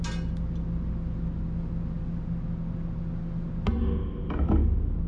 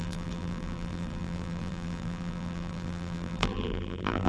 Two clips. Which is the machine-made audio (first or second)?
second